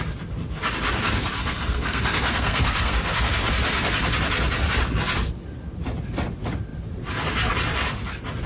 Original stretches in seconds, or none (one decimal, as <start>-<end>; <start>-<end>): 0.0-1.4; 3.2-8.5